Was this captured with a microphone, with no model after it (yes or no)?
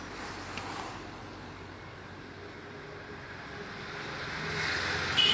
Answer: yes